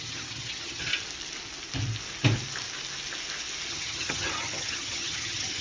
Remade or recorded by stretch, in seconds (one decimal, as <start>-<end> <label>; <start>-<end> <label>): 0.0-0.9 remade; 0.9-3.7 recorded; 3.7-5.6 remade